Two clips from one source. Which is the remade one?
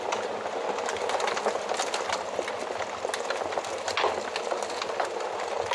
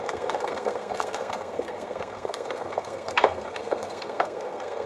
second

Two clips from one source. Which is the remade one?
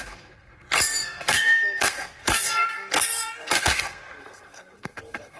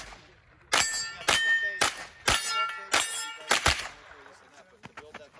first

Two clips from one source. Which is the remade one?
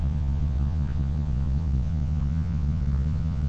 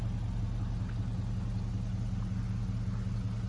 first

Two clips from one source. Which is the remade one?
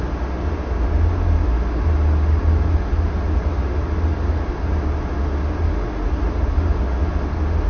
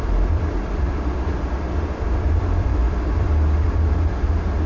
second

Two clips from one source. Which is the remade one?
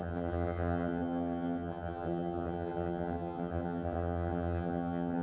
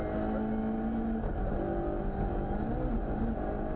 first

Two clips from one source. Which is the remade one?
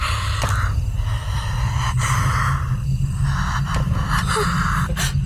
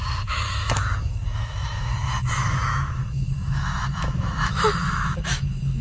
second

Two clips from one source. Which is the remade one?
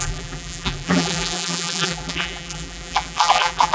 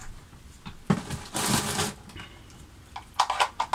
first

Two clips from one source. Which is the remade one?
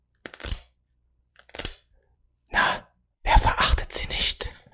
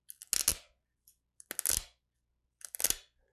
first